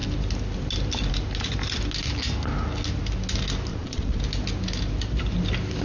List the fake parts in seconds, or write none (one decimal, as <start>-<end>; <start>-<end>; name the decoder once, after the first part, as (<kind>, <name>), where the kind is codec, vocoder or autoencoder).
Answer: 3.7-4.2 (vocoder, Vocos)